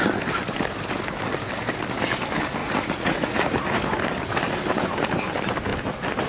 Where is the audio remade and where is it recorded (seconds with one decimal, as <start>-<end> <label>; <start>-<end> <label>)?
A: 0.0-2.6 recorded; 2.6-3.8 remade; 3.8-6.3 recorded